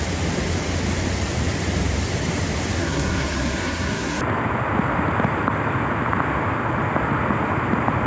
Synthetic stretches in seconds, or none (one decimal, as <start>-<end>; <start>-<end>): 2.8-4.2

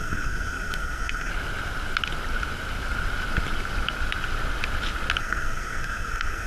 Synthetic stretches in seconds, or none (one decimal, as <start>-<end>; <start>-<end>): 0.0-1.3; 5.2-6.5